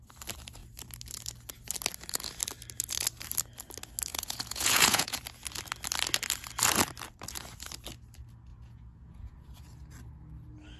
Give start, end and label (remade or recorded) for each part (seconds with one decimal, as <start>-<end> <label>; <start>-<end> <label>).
0.0-4.1 recorded; 4.1-5.2 remade; 5.2-8.5 recorded; 8.5-9.6 remade; 9.6-10.8 recorded